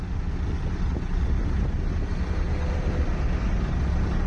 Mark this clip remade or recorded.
recorded